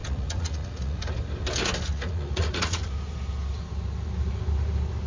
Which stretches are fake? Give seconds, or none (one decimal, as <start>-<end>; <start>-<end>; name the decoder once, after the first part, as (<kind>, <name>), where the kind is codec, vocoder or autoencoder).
0.0-1.1 (vocoder, Vocos); 1.9-2.9